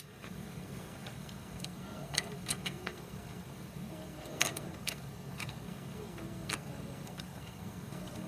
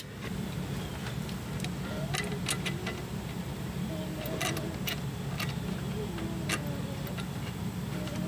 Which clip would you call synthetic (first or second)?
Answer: first